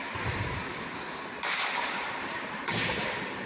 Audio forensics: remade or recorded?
remade